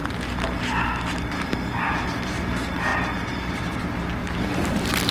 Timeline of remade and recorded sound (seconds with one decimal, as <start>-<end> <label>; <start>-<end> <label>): 0.0-5.1 recorded